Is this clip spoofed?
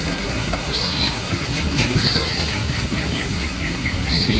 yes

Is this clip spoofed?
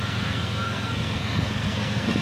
yes